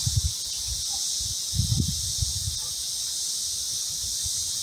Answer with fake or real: real